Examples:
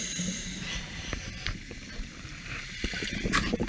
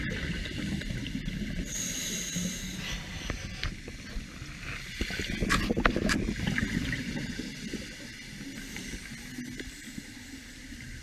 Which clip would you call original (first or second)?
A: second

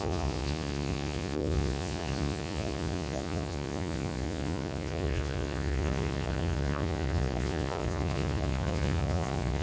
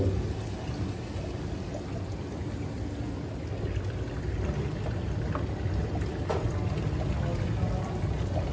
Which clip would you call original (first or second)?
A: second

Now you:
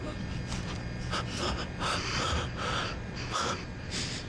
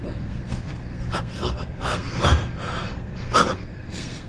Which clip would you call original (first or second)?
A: first